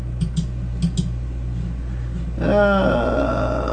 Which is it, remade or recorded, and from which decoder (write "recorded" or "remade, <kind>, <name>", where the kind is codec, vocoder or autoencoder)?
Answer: recorded